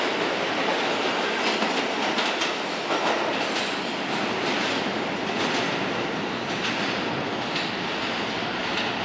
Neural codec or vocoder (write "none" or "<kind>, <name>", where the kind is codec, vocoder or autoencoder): none